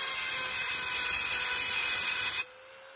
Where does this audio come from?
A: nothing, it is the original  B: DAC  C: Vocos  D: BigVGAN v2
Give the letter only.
A